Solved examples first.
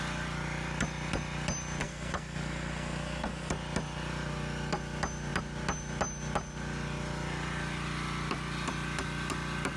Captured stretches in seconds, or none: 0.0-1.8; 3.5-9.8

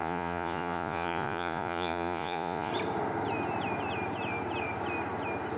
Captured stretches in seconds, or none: 2.7-5.6

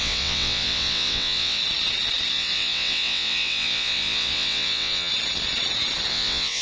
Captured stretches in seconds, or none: 1.6-2.3; 5.1-6.1

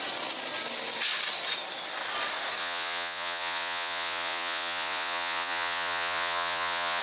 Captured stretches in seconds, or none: 0.0-2.6